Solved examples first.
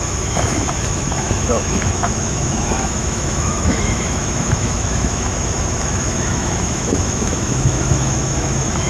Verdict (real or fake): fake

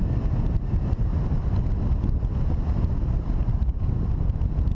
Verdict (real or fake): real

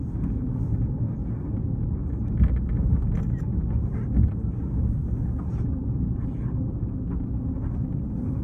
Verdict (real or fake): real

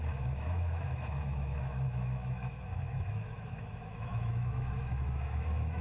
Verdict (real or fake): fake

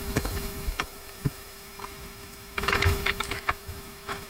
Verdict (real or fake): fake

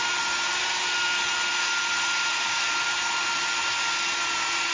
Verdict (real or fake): real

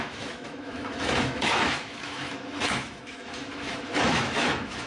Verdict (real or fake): fake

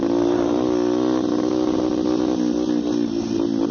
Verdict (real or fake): real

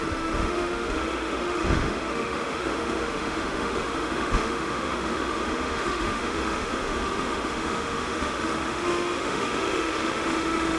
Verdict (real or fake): fake